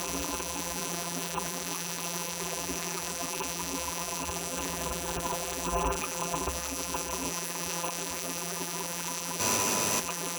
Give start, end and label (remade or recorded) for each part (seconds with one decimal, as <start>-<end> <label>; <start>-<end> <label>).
0.0-9.4 remade; 9.4-10.0 recorded; 10.0-10.4 remade